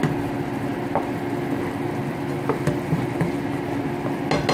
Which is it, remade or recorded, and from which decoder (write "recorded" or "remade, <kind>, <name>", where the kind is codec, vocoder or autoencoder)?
recorded